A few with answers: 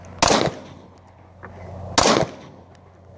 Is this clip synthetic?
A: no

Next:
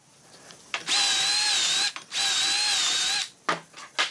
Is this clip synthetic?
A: no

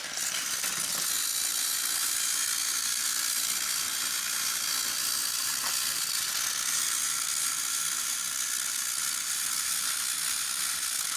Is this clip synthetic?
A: no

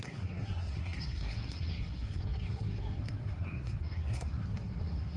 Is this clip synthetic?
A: yes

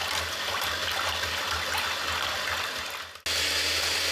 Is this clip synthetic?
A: no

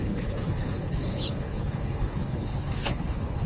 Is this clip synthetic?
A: yes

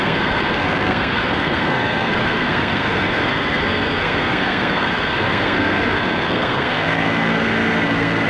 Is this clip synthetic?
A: yes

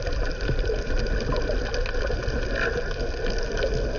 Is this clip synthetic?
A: no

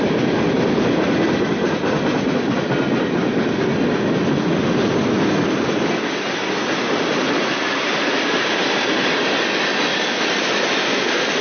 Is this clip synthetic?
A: no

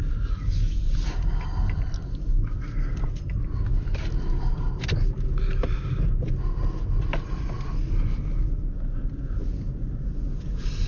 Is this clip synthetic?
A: no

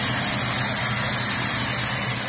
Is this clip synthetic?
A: no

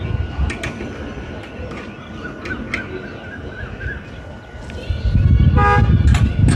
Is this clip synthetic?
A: no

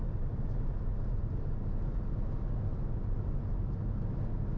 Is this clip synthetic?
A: no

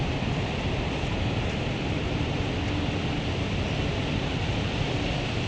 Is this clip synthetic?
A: no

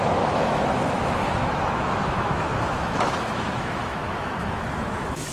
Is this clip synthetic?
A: yes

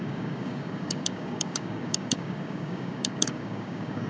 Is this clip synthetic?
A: yes